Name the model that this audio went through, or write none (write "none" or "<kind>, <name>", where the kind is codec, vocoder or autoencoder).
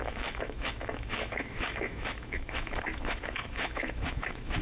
autoencoder, DAC-VAE